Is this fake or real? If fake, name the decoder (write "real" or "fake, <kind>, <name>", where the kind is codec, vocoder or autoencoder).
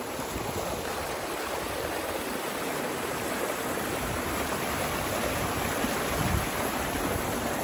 fake, vocoder, BigVGAN v2